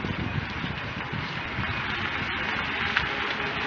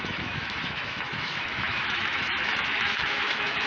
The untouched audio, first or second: first